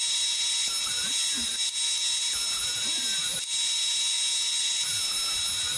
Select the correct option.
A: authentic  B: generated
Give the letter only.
A